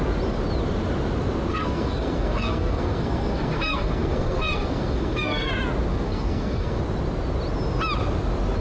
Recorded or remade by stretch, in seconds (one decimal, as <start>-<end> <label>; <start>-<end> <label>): 0.0-1.5 recorded; 1.5-5.5 remade; 5.5-5.9 recorded; 5.9-6.8 remade; 6.8-8.6 recorded